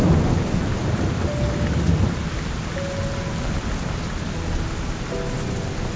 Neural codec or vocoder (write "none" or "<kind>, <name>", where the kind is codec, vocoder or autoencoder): none